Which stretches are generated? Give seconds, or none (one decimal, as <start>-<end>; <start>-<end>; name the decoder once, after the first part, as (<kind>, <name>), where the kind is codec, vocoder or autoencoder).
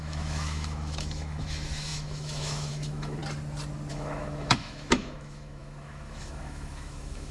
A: 0.0-3.2 (autoencoder, DAC-VAE); 3.9-7.3